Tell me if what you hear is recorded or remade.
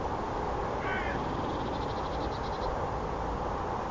recorded